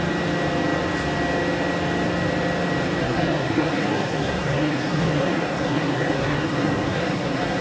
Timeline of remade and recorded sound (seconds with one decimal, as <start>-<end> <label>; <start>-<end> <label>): 0.0-3.0 recorded; 3.0-7.6 remade